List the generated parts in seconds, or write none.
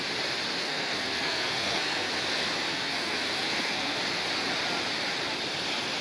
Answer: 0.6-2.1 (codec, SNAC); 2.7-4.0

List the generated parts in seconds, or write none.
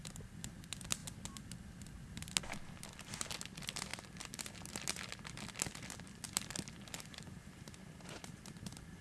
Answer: none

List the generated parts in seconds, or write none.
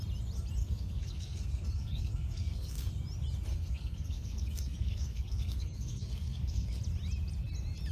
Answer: 0.6-2.9 (codec, SNAC); 3.5-6.8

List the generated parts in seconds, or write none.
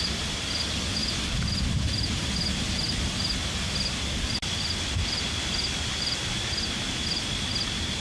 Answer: none